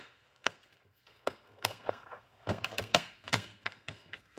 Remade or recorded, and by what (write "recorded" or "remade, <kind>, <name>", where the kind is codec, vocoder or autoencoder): remade, codec, SNAC